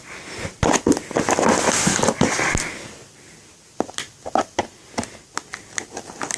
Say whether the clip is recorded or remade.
recorded